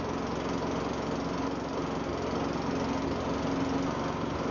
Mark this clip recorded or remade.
recorded